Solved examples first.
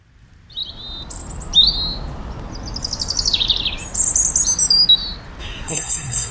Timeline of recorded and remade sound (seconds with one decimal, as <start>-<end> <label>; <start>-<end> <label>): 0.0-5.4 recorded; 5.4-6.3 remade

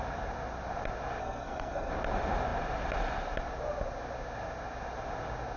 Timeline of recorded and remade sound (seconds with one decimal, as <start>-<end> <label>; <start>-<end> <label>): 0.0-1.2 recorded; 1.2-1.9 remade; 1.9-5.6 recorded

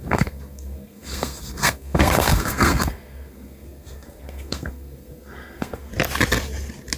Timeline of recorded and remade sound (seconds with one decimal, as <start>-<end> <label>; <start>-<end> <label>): 0.0-5.9 remade; 5.9-7.0 recorded

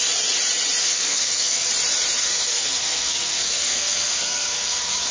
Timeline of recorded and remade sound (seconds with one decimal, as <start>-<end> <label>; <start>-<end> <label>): 0.0-0.8 recorded; 0.8-1.7 remade; 1.7-2.2 recorded; 2.2-5.1 remade

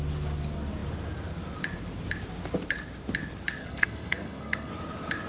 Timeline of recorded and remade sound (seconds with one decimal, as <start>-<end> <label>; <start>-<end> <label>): 0.0-3.6 recorded; 3.6-4.7 remade; 4.7-5.3 recorded

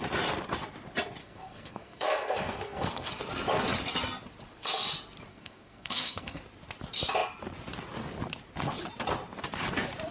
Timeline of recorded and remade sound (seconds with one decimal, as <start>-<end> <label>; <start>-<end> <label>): 0.0-1.2 recorded; 1.2-3.1 remade; 3.1-5.3 recorded; 5.3-6.4 remade; 6.4-10.1 recorded